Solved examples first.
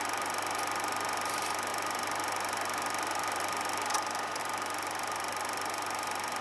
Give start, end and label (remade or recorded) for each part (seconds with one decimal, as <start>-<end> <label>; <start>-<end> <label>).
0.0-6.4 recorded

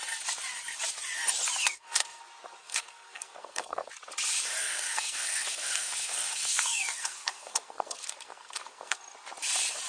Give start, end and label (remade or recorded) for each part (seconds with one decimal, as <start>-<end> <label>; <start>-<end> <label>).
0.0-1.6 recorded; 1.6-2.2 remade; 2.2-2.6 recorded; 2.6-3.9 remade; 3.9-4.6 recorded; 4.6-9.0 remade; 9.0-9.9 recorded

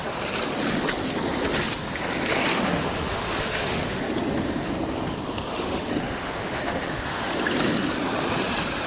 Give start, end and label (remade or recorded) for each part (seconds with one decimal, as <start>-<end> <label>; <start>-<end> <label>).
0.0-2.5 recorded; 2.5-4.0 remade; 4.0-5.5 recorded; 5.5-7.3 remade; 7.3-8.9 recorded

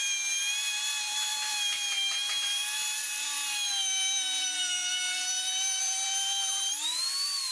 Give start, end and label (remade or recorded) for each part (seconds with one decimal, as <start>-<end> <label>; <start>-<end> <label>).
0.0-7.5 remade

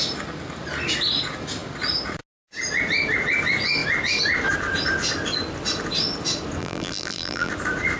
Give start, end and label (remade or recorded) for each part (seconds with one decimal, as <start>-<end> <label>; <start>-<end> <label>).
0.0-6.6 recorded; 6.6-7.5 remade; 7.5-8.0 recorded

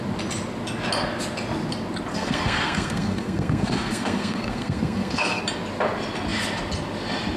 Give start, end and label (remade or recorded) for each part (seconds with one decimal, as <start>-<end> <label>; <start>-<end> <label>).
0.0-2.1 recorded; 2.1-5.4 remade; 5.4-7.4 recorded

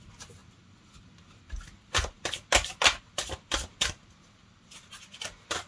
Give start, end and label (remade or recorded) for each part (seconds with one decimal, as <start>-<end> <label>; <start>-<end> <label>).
0.0-5.7 recorded

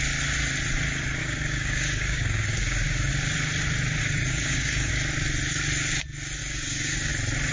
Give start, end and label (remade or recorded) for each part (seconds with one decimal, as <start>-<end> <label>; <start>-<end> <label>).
0.0-1.2 recorded; 1.2-3.1 remade; 3.1-4.0 recorded; 4.0-4.9 remade; 4.9-6.4 recorded; 6.4-7.1 remade; 7.1-7.5 recorded